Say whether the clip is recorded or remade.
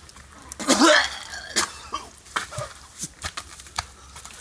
recorded